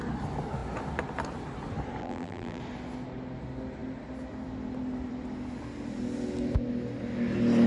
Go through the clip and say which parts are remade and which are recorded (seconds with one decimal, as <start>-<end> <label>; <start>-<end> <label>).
0.0-2.0 recorded; 2.0-2.6 remade; 2.6-7.7 recorded